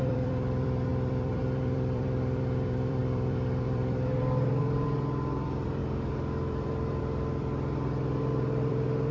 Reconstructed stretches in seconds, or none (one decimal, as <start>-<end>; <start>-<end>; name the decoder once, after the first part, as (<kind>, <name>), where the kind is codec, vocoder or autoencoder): 0.0-9.1 (vocoder, BigVGAN v2)